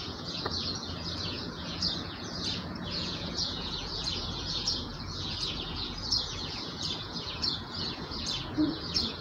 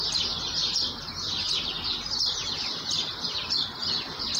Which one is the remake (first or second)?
first